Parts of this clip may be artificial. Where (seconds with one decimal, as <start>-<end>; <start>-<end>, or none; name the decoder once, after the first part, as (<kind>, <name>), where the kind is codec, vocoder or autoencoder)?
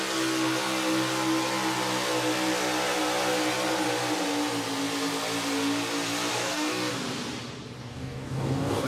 6.3-6.9 (codec, DAC); 7.8-8.9